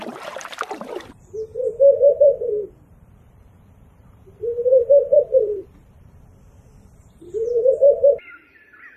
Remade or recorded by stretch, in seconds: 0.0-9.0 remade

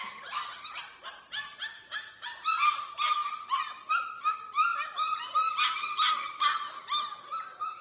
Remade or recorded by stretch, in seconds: 0.0-3.2 remade; 3.2-3.9 recorded; 3.9-7.8 remade

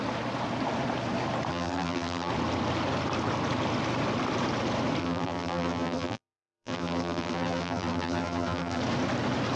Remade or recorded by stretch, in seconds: 0.0-1.5 recorded; 1.5-2.3 remade; 2.3-5.0 recorded; 5.0-8.8 remade; 8.8-9.6 recorded

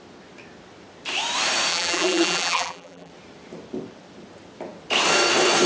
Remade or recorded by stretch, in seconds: 0.0-1.7 recorded; 1.7-3.1 remade; 3.1-5.7 recorded